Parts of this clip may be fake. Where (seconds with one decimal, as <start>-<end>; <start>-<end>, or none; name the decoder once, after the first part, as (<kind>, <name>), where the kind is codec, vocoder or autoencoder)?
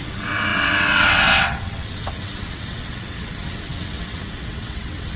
0.0-5.2 (vocoder, WaveNeXt)